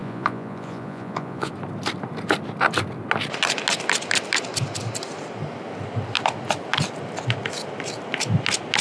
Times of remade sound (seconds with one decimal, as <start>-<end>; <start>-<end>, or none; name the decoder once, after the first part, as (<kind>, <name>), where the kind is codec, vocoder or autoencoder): 0.0-1.5 (vocoder, Vocos)